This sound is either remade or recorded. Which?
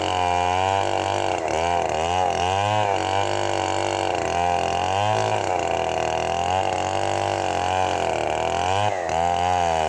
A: recorded